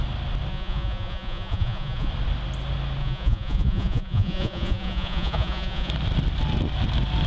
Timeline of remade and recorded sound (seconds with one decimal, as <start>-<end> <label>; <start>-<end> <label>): 0.0-0.5 recorded; 0.5-2.1 remade; 2.1-3.0 recorded; 3.0-5.9 remade; 5.9-7.3 recorded

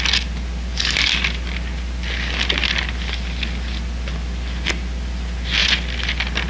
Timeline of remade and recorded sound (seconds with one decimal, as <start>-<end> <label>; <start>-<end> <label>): 0.0-6.5 recorded

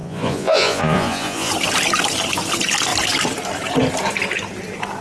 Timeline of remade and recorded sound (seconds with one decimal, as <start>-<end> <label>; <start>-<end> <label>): 0.0-1.5 remade; 1.5-5.0 recorded

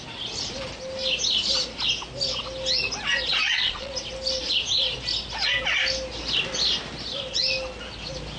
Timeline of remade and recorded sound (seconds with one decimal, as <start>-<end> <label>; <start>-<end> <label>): 0.0-3.4 recorded; 3.4-3.9 remade; 3.9-8.4 recorded

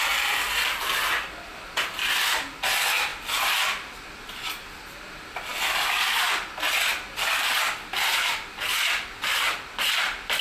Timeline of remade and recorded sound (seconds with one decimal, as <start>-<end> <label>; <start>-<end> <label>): 0.0-10.4 recorded

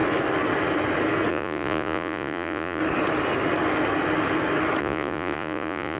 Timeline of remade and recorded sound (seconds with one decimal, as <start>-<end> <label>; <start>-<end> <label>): 0.0-1.3 recorded; 1.3-2.8 remade; 2.8-4.8 recorded; 4.8-6.0 remade

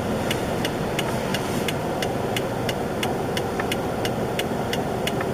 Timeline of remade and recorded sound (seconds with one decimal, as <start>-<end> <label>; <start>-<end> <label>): 0.0-5.3 recorded